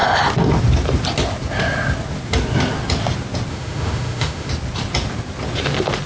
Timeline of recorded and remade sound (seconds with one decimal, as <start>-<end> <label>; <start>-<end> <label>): 0.0-3.5 recorded; 3.5-4.5 remade; 4.5-6.1 recorded